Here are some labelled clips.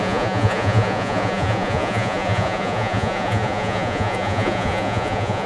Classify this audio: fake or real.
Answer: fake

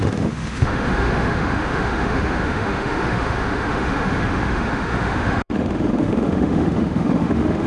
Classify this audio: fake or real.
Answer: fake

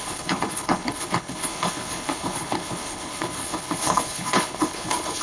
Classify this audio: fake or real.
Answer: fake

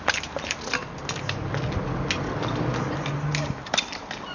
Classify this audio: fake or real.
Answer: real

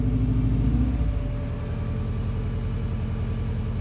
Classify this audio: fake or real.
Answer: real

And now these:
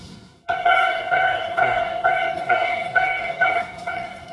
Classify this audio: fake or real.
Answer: fake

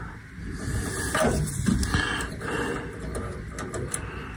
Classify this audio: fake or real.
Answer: real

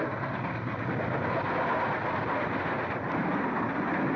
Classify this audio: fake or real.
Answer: real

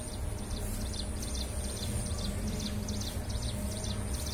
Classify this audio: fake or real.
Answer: real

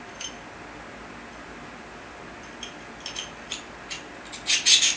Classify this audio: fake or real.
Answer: real